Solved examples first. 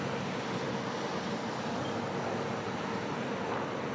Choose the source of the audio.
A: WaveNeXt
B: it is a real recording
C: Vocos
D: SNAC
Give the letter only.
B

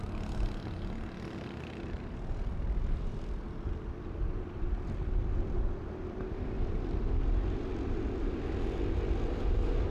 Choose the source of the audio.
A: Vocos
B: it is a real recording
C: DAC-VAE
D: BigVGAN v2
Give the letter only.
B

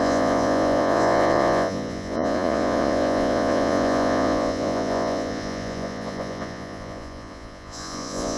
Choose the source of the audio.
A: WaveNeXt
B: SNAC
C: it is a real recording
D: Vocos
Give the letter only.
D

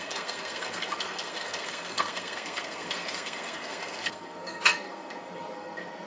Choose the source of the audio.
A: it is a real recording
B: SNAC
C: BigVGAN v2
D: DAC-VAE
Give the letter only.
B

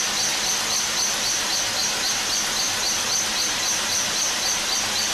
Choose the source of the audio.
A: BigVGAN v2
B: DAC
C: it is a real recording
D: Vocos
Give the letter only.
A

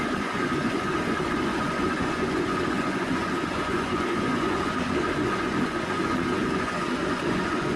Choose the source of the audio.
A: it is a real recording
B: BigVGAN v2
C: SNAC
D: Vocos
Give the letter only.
D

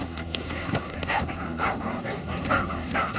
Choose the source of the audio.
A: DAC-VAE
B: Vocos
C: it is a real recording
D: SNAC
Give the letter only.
D